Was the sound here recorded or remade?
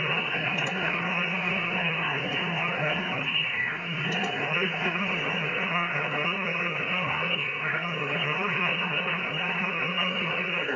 remade